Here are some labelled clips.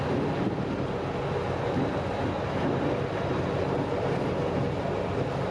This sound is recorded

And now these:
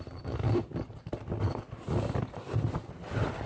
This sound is recorded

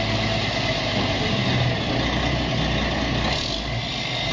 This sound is recorded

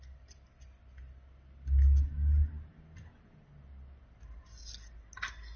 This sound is recorded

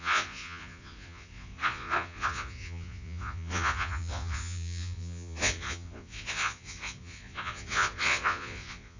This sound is remade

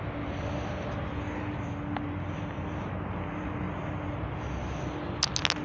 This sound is recorded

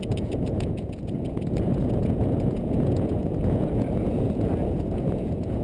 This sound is remade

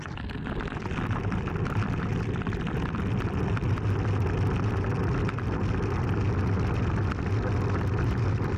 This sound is recorded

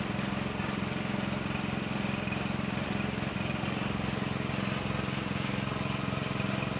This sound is recorded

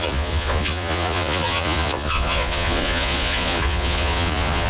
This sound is remade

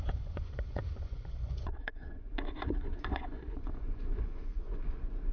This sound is remade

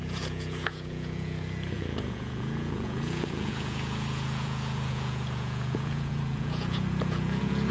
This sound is remade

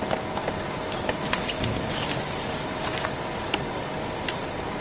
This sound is recorded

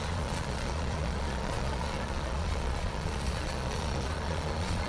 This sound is remade